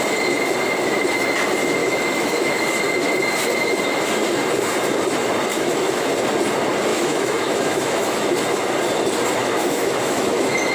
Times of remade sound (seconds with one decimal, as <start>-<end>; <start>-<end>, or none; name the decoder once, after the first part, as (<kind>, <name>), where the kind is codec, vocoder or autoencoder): 1.8-2.5 (autoencoder, DAC-VAE); 5.5-6.1; 6.9-8.3; 9.4-10.7